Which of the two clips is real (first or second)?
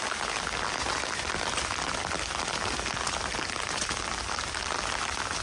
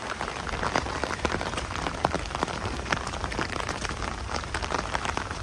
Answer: first